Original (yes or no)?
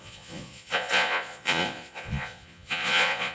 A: no